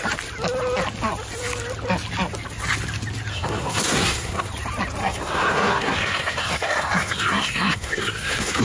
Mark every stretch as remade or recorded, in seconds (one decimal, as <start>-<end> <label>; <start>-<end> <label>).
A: 0.0-3.3 recorded; 3.3-4.5 remade; 4.5-5.0 recorded; 5.0-8.6 remade